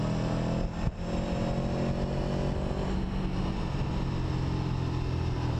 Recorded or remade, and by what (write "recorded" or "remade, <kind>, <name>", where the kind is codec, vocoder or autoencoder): recorded